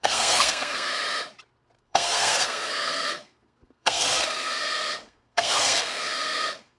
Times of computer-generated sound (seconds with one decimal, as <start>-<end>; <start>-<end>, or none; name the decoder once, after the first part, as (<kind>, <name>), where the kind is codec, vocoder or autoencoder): 0.0-0.9 (codec, SNAC); 1.8-6.8